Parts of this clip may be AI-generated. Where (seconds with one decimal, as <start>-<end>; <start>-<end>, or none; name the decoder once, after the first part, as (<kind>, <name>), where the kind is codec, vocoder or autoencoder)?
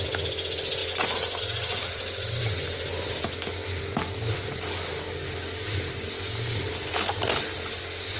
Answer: none